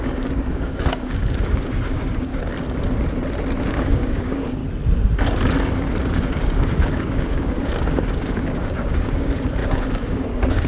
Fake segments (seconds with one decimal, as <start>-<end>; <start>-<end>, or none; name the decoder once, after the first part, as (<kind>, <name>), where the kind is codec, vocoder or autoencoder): 0.0-2.3 (codec, DAC); 3.6-4.6; 6.0-10.7